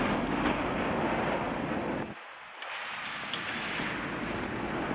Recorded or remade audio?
recorded